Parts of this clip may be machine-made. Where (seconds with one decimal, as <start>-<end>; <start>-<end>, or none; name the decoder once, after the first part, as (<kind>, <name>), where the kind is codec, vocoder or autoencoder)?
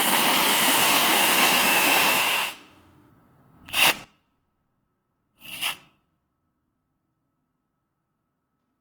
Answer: 0.5-3.1 (autoencoder, DAC-VAE)